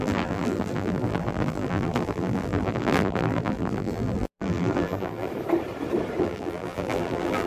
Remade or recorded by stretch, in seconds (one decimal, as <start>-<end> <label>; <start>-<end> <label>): 0.0-5.3 remade; 5.3-6.2 recorded; 6.2-7.5 remade